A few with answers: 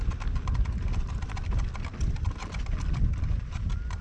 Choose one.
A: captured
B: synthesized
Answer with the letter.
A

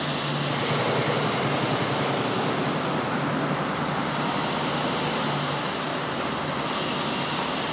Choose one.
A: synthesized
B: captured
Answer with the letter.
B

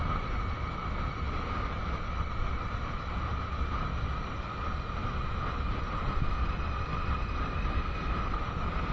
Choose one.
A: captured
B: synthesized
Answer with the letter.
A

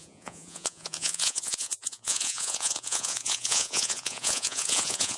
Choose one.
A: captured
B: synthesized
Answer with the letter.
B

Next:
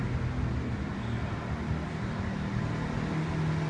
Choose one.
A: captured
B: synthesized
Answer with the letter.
A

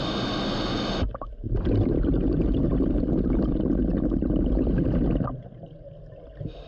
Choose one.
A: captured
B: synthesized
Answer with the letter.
A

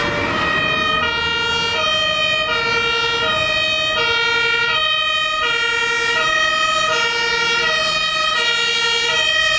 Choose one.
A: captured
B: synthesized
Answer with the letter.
A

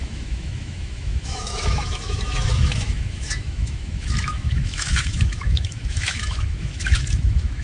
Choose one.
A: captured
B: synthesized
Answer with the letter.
B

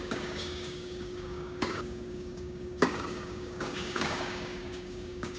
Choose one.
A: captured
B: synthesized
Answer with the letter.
B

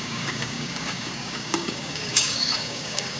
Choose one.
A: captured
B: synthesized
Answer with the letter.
B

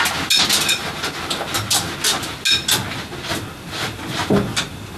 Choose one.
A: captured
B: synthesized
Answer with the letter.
A